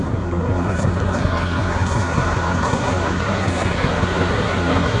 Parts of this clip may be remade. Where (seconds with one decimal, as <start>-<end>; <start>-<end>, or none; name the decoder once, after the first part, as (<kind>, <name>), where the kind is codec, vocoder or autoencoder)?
0.0-5.0 (codec, SNAC)